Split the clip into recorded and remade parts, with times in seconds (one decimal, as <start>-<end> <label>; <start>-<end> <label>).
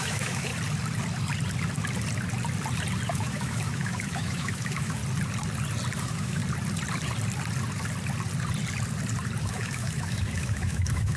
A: 0.0-0.5 remade; 0.5-3.1 recorded; 3.1-5.0 remade; 5.0-6.0 recorded; 6.0-6.4 remade; 6.4-9.4 recorded; 9.4-11.2 remade